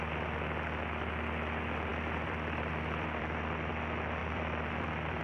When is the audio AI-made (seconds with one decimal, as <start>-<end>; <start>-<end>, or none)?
1.9-3.7; 4.2-5.2